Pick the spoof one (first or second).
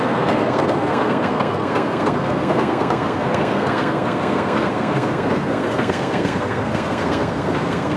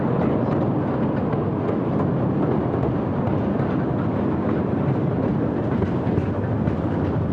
first